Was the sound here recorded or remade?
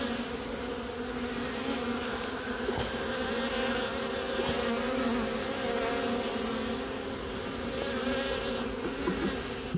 recorded